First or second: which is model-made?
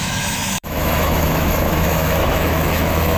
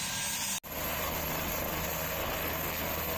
first